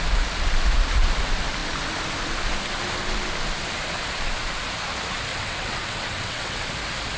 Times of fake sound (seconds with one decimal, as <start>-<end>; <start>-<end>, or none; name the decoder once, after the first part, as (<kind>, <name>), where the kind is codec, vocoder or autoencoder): 5.3-6.7 (vocoder, WaveNeXt)

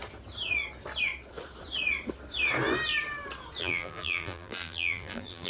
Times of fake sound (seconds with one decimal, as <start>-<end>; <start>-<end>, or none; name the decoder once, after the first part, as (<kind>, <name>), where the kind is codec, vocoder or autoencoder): 3.6-5.5 (vocoder, BigVGAN v2)

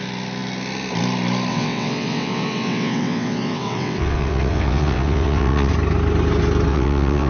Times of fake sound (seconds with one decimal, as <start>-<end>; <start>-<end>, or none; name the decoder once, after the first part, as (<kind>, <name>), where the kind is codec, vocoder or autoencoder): 1.5-5.7 (vocoder, WaveNeXt); 6.7-7.3

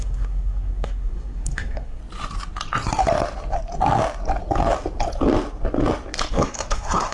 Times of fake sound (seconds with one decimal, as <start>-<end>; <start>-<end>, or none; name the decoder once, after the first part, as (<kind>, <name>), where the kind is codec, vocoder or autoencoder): 0.0-2.0 (codec, SNAC); 6.3-7.1